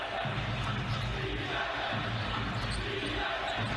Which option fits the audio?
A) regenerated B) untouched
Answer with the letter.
B